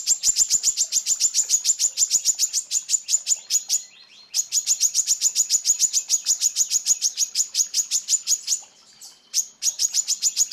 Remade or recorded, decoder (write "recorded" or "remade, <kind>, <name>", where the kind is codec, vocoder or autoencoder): remade, vocoder, BigVGAN v2